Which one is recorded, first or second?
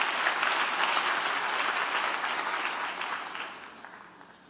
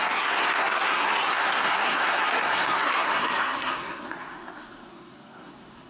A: first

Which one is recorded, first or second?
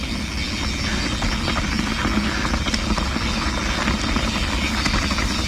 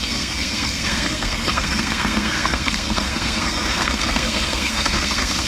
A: first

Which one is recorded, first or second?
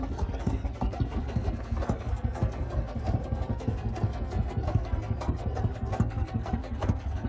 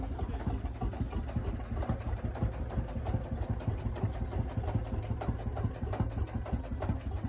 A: second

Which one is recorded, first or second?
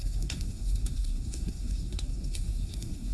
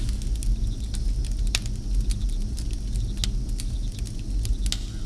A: second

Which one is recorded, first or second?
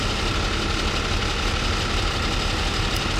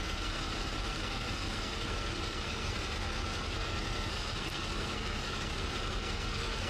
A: first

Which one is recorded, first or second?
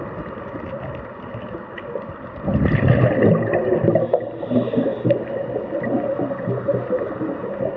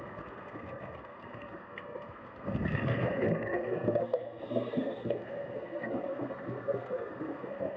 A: first